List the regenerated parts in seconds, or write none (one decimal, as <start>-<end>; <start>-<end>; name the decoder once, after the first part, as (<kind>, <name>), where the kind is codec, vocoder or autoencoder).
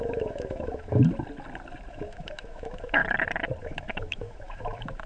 0.0-1.0 (autoencoder, DAC-VAE); 1.9-3.0; 3.6-5.1